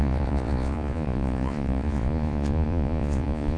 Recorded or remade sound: remade